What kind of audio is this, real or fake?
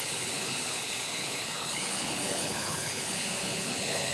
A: fake